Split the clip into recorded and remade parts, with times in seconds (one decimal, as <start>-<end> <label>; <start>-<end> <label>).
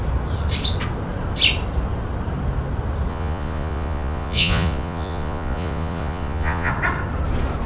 0.0-3.1 recorded; 3.1-6.7 remade; 6.7-7.7 recorded